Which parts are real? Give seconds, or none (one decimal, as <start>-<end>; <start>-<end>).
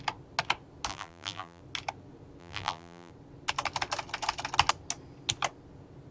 0.0-0.9; 1.6-2.4; 3.1-6.1